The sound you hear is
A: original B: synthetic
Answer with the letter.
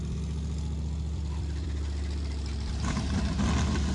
A